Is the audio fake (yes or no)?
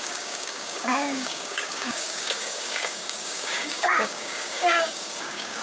yes